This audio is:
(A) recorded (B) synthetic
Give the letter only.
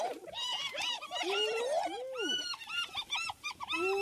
B